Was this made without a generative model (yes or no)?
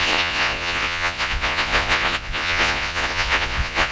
no